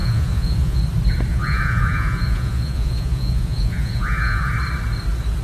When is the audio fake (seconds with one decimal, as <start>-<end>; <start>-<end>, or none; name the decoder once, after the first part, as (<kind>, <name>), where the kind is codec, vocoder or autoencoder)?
0.0-0.8 (vocoder, Vocos); 1.3-4.5